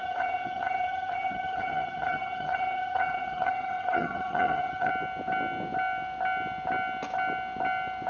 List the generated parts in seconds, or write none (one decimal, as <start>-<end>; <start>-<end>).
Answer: 0.0-4.9

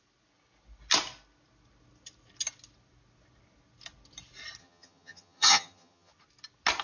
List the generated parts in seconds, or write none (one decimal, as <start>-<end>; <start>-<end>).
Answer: 4.6-6.1

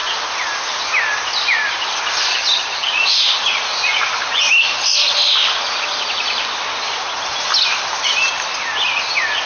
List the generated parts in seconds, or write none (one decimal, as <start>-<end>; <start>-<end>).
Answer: 2.3-2.9

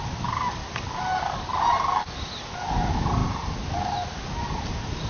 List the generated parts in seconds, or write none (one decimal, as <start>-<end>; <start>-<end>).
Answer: none